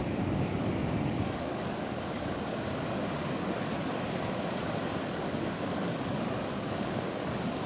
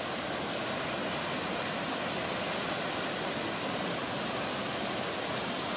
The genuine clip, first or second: second